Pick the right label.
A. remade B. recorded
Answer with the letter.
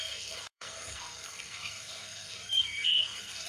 A